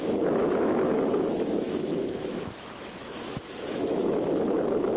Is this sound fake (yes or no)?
yes